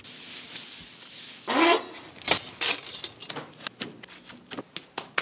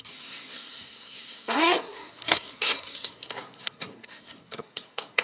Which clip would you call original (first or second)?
first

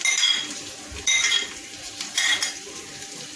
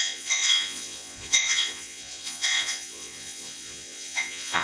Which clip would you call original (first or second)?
first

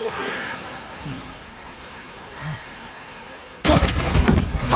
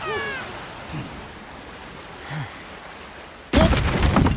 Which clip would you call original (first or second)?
second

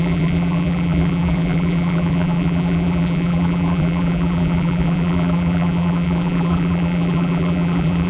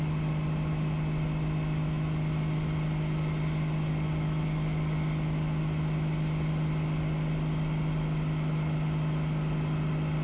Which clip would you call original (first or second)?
second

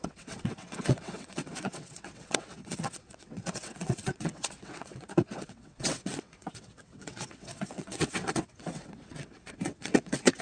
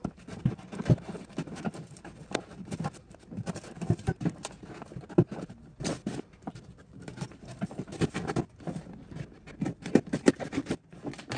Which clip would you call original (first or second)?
second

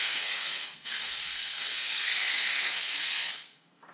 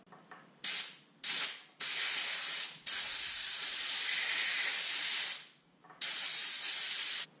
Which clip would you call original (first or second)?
second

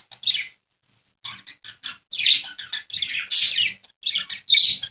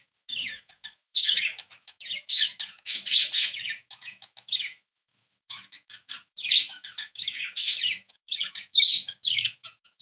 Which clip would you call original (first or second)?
first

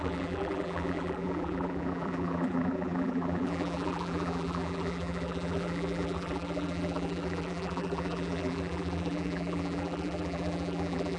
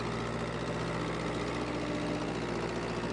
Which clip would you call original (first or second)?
second